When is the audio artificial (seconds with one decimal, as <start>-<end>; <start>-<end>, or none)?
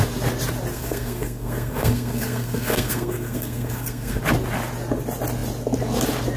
0.7-4.2